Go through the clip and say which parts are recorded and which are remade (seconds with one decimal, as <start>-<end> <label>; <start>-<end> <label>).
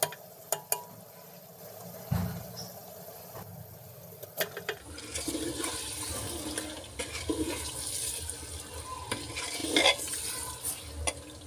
0.0-11.5 recorded